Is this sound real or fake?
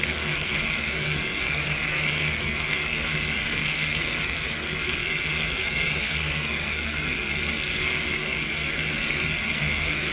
fake